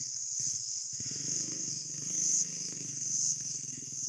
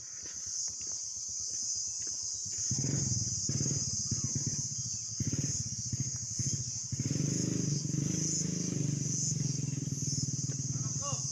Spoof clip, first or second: first